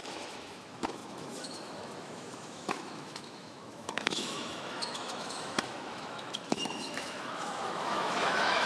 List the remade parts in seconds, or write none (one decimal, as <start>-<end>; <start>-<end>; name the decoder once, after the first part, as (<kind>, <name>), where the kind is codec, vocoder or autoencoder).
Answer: 0.0-8.7 (autoencoder, DAC-VAE)